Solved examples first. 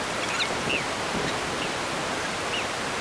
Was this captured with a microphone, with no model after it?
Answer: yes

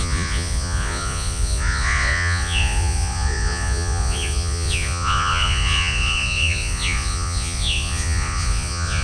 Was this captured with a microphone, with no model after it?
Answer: no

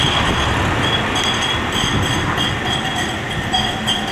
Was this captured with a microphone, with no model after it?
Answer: yes